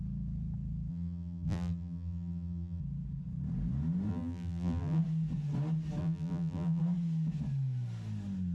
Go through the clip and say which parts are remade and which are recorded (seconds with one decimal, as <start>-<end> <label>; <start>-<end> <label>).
0.0-0.9 recorded; 0.9-2.8 remade; 2.8-4.1 recorded; 4.1-5.0 remade; 5.0-6.0 recorded; 6.0-6.8 remade; 6.8-8.5 recorded